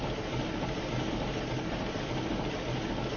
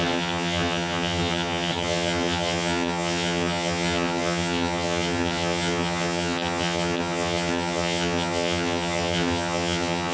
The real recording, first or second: first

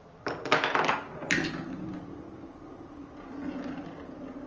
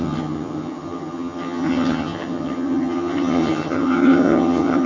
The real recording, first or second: first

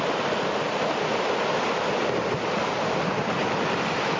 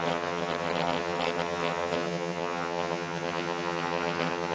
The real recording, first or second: first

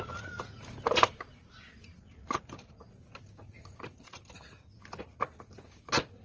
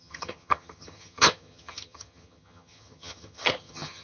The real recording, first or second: first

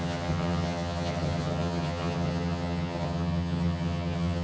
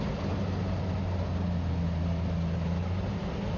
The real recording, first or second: second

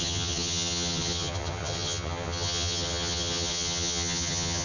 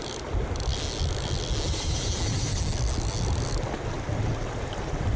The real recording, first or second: second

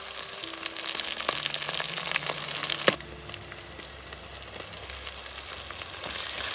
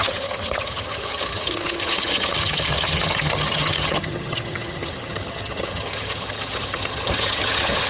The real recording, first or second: first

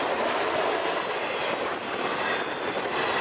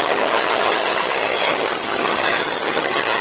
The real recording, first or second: first